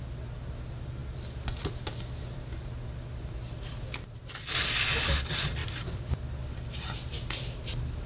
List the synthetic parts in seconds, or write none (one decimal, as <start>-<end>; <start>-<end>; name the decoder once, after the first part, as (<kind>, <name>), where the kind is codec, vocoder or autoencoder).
none